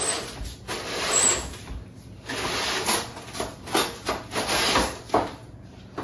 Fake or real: real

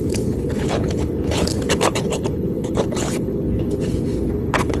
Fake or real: fake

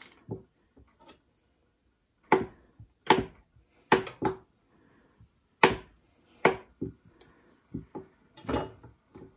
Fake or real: real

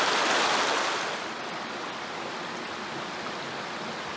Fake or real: real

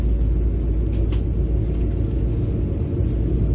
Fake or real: real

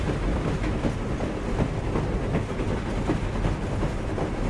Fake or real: real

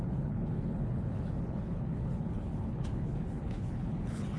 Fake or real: fake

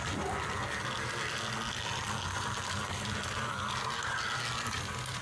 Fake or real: real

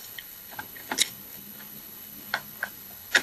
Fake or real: fake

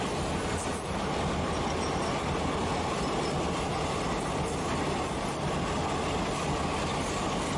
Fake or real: real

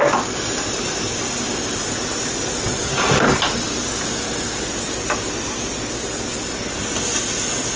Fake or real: real